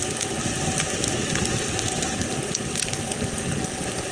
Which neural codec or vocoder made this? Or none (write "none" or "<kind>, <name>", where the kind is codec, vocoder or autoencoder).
none